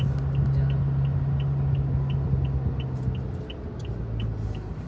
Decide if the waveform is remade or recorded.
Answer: recorded